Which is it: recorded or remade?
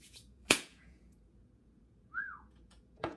remade